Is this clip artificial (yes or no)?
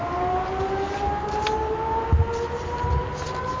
no